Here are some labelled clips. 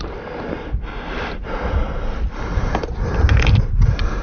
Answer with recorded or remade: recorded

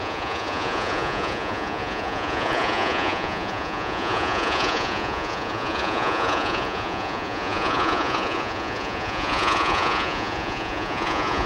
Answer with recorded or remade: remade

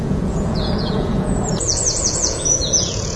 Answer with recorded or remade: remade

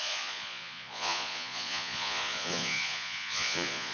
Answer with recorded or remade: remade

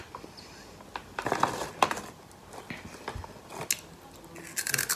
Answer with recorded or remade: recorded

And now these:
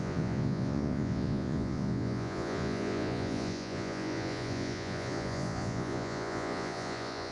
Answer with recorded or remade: remade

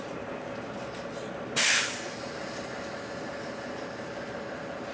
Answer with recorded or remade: recorded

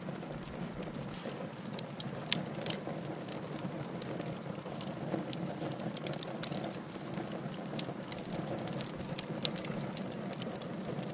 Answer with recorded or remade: recorded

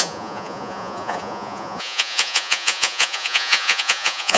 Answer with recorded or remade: remade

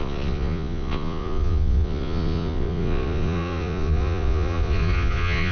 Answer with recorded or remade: remade